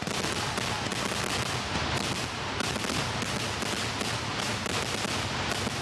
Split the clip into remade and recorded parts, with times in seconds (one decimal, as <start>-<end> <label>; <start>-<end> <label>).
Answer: 0.0-5.8 recorded